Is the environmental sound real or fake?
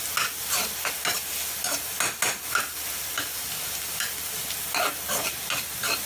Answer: real